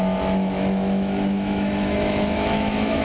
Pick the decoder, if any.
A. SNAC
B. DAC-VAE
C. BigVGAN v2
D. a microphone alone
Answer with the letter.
B